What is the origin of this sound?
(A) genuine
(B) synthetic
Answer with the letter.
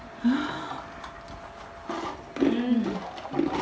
A